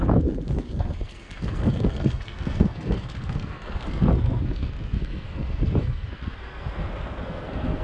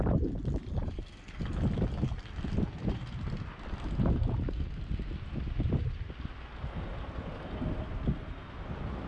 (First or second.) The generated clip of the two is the first